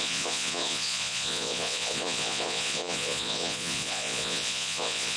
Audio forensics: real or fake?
fake